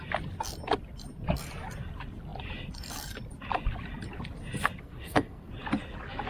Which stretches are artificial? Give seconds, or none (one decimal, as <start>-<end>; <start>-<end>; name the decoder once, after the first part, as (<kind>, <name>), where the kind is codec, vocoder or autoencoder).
4.8-5.5 (codec, SNAC)